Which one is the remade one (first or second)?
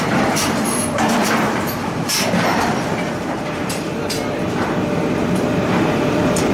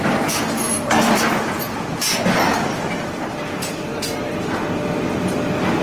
first